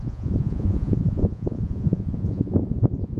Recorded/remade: remade